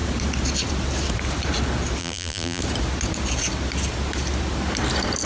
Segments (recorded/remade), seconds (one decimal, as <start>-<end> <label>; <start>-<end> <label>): 0.0-2.0 recorded; 2.0-2.6 remade; 2.6-5.3 recorded